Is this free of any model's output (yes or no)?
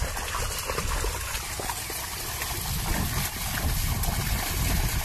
yes